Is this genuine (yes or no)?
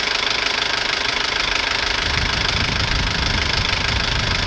no